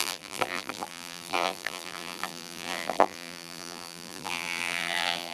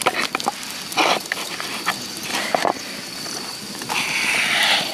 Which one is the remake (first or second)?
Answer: first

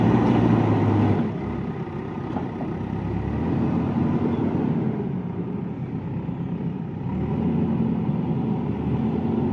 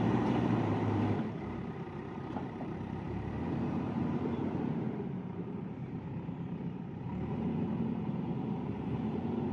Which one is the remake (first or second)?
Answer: second